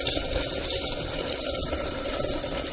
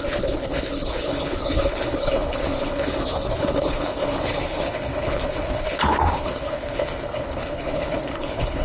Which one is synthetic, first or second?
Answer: second